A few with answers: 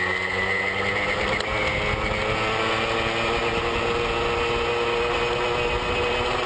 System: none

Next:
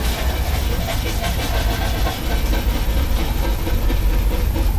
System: none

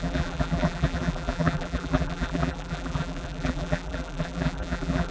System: vocoder, BigVGAN v2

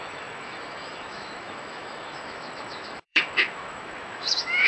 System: autoencoder, DAC-VAE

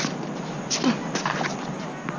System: none